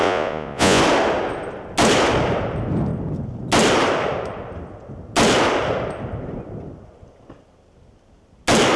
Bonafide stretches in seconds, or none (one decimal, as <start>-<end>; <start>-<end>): 0.8-8.8